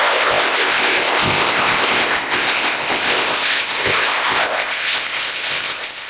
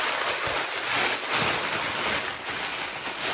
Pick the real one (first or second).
second